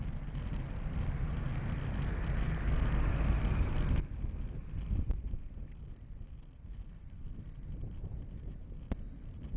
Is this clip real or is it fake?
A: real